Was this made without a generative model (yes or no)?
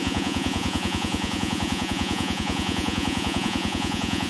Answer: no